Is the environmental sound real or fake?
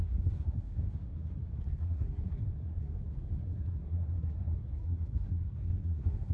fake